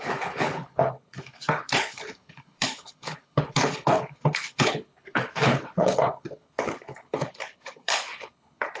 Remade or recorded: remade